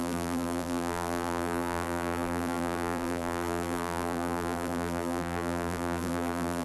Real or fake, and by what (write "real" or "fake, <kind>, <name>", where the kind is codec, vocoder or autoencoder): fake, vocoder, BigVGAN v2